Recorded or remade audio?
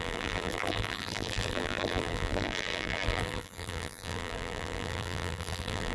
remade